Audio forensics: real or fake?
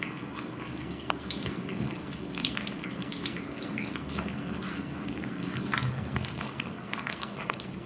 fake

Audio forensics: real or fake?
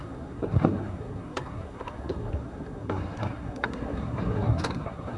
fake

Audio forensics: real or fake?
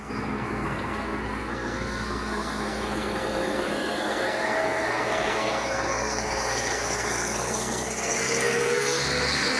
fake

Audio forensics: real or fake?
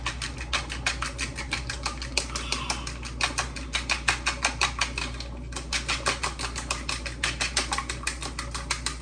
real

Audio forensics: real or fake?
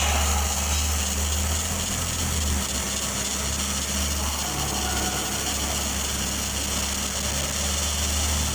real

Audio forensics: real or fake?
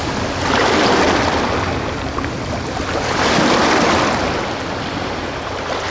real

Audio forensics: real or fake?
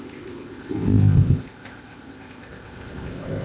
fake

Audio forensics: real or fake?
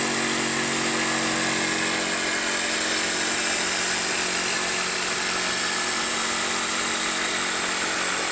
real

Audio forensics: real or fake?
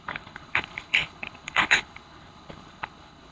fake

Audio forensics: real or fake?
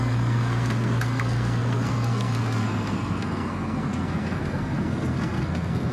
fake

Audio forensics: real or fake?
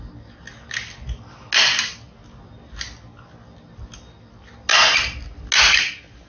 real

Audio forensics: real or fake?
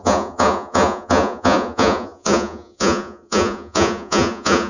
fake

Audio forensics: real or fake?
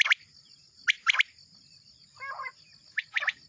real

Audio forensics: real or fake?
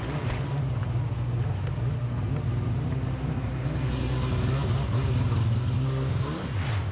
real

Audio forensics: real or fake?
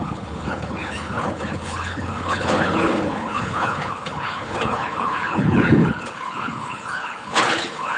fake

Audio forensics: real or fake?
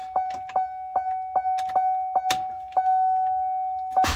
real